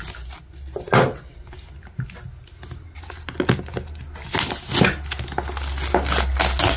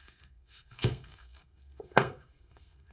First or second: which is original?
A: first